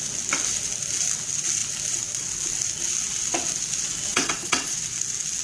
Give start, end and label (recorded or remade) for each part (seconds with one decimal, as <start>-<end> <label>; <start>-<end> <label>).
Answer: 0.0-4.1 recorded; 4.1-4.8 remade; 4.8-5.4 recorded

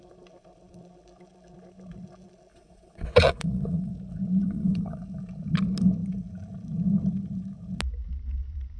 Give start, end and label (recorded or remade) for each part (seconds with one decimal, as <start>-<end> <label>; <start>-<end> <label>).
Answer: 0.0-2.5 recorded; 2.5-3.9 remade; 3.9-4.4 recorded; 4.4-5.0 remade; 5.0-8.8 recorded